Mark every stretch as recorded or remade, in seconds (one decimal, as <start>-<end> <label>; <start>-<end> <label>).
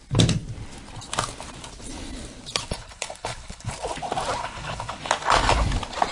0.0-2.7 recorded; 2.7-3.7 remade; 3.7-4.4 recorded; 4.4-5.0 remade; 5.0-6.1 recorded